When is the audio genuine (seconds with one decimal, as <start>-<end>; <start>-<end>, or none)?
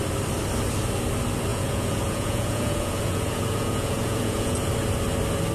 0.0-1.5; 4.6-5.5